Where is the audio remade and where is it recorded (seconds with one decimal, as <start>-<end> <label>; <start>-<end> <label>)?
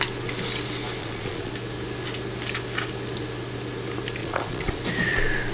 0.0-1.0 recorded; 1.0-1.5 remade; 1.5-4.2 recorded; 4.2-4.8 remade; 4.8-5.5 recorded